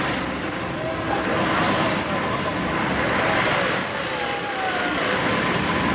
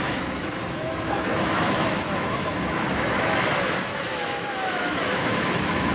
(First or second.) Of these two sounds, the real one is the first